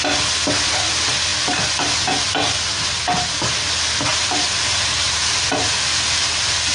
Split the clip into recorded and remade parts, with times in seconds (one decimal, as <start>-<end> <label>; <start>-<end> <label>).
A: 0.0-4.1 recorded; 4.1-5.5 remade; 5.5-6.7 recorded

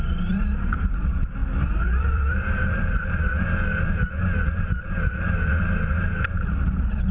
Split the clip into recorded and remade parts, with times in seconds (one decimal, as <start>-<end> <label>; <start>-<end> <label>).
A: 0.0-1.4 recorded; 1.4-3.4 remade; 3.4-7.1 recorded

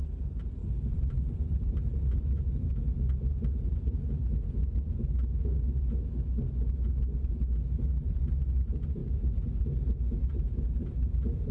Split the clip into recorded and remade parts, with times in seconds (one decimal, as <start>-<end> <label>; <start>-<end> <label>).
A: 0.0-4.2 remade; 4.2-8.2 recorded; 8.2-11.5 remade